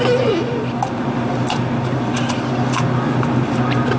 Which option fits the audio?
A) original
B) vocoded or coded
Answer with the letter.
A